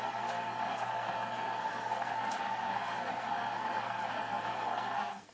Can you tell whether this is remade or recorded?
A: remade